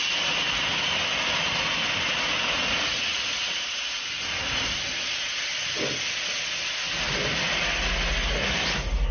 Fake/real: real